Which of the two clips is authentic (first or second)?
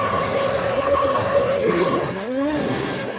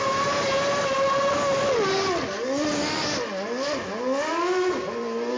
second